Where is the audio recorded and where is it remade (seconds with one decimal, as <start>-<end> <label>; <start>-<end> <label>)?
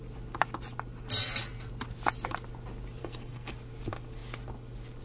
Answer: 0.0-3.0 recorded; 3.0-3.5 remade; 3.5-5.0 recorded